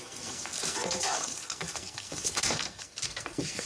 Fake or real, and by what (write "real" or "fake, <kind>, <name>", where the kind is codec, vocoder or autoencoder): fake, codec, SNAC